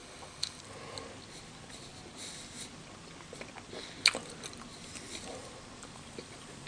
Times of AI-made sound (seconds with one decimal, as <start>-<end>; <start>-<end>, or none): 0.0-0.6